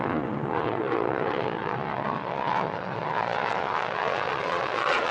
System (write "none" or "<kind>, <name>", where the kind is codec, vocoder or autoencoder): vocoder, Vocos